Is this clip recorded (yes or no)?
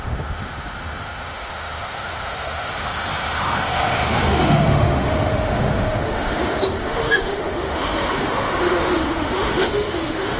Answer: no